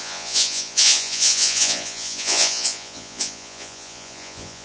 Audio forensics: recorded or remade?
remade